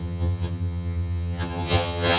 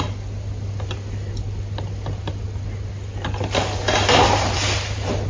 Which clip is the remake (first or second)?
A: first